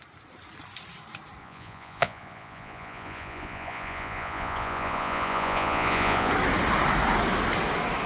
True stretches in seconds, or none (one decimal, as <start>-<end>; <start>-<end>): 0.0-1.4; 6.3-8.1